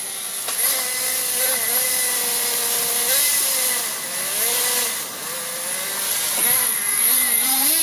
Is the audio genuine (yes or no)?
yes